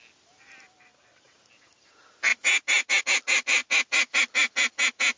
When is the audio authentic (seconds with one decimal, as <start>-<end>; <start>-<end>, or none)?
0.0-5.2